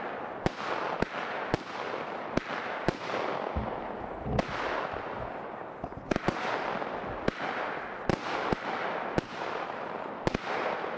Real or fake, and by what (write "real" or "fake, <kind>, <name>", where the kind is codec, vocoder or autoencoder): real